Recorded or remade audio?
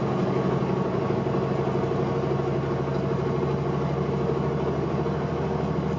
recorded